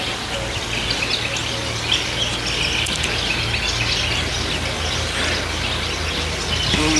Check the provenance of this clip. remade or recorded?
recorded